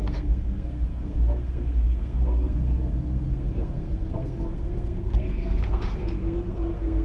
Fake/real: fake